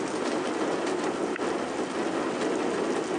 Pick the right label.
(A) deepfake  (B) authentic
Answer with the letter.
B